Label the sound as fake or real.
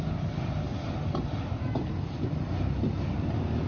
real